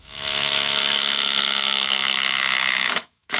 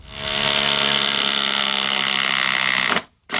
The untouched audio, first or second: second